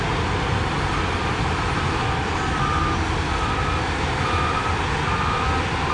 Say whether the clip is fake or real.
real